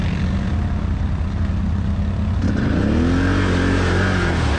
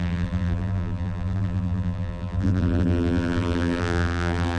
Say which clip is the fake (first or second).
second